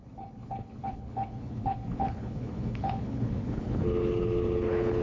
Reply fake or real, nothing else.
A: fake